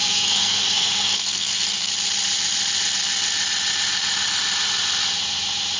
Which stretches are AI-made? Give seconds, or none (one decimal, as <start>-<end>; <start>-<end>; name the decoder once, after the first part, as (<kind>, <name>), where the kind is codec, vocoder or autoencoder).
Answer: 0.0-1.9 (codec, SNAC)